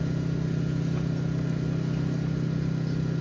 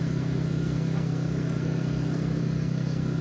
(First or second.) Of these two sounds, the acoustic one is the first